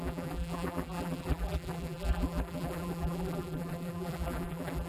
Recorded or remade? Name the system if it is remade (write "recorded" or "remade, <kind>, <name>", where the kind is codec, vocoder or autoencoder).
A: remade, vocoder, BigVGAN v2